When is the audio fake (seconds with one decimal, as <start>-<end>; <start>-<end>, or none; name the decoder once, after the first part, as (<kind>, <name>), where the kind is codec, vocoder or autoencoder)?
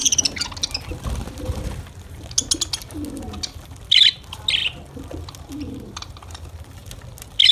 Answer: none